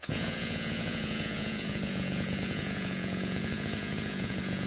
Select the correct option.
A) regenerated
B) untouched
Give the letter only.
A